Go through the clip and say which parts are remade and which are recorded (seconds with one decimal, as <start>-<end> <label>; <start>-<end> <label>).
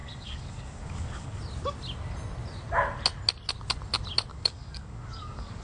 0.0-1.4 remade; 1.4-4.3 recorded; 4.3-5.6 remade